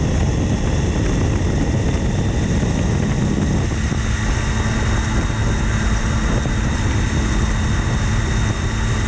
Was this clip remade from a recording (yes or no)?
no